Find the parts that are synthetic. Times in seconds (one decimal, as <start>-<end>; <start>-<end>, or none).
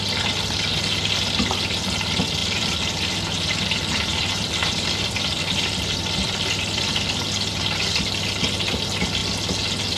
2.4-3.1; 4.1-6.9